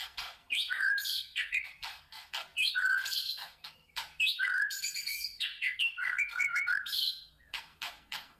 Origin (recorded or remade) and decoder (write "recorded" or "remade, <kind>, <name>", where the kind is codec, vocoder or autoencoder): remade, codec, SNAC